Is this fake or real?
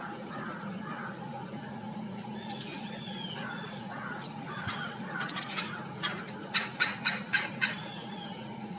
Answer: fake